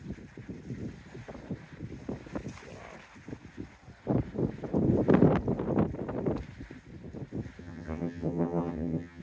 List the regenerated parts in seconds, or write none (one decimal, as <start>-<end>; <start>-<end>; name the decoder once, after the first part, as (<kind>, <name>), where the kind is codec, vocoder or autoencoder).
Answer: 7.6-9.2 (vocoder, HiFi-GAN)